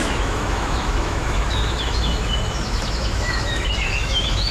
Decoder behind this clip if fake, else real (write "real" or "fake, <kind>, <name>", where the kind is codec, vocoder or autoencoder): fake, autoencoder, DAC-VAE